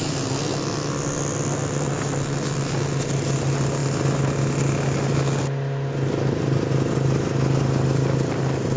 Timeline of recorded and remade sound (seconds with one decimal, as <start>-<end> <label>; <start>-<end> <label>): 0.0-8.8 recorded